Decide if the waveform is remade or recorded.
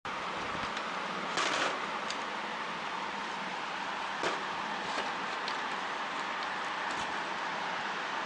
recorded